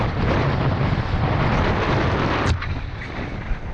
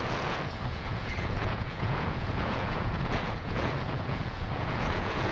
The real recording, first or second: first